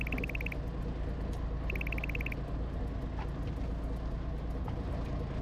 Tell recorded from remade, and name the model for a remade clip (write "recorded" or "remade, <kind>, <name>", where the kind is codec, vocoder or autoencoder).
recorded